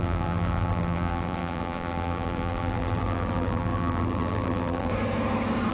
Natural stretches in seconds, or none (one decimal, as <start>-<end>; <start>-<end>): 4.9-5.7